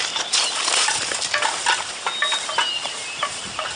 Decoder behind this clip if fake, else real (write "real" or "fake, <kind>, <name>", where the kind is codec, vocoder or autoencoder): real